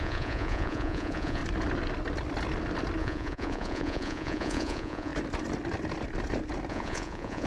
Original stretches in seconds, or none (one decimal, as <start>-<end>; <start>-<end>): 1.4-3.0; 5.1-6.7